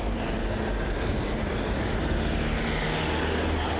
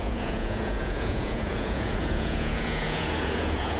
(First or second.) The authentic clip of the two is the first